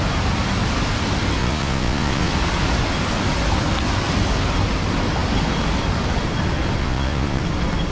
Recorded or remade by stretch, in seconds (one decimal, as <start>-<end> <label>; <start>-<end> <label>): 0.0-1.4 recorded; 1.4-2.3 remade; 2.3-6.8 recorded; 6.8-7.4 remade; 7.4-7.9 recorded